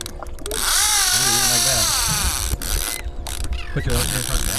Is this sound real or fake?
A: real